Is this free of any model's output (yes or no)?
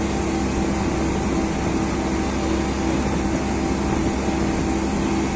yes